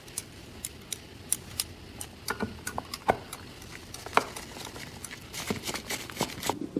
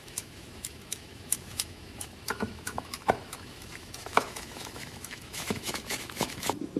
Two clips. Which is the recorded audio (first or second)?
first